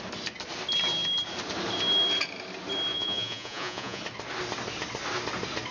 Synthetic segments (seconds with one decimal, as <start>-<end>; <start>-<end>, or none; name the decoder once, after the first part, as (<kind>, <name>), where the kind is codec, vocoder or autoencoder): 2.9-4.0 (vocoder, Vocos)